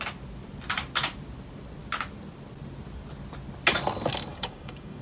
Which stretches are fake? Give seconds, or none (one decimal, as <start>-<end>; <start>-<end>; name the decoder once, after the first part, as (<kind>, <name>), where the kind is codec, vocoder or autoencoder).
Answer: 4.3-5.0 (codec, DAC)